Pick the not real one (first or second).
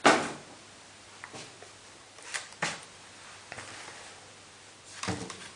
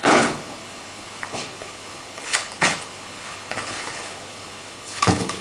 second